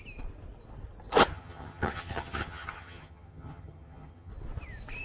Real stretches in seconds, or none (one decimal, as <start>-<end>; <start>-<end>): 0.0-1.3; 4.3-5.0